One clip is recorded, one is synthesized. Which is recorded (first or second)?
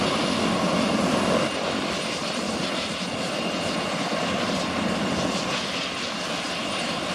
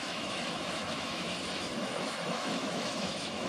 first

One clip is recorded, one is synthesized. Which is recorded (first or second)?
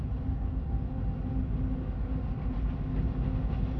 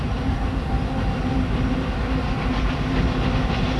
first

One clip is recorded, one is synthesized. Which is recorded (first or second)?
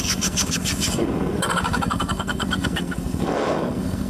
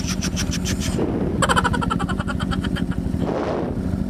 second